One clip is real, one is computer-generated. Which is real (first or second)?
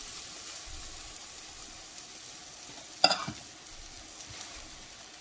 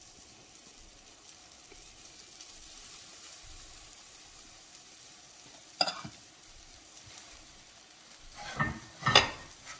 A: first